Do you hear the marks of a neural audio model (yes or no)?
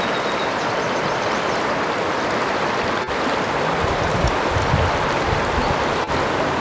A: no